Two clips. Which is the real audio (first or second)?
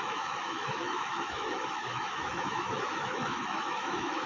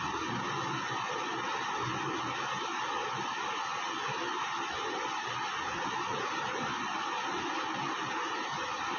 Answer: second